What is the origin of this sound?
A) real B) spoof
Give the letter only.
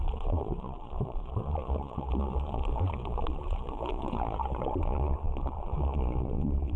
B